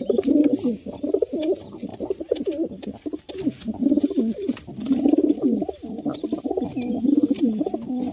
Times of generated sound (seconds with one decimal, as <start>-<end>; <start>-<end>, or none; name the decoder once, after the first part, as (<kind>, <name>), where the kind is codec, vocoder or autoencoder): none